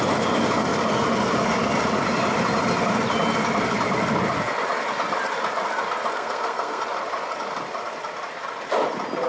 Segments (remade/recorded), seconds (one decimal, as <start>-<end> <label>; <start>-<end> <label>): 0.0-6.1 recorded; 6.1-6.8 remade; 6.8-9.3 recorded